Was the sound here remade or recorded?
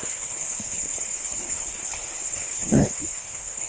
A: remade